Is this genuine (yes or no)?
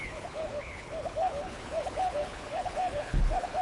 no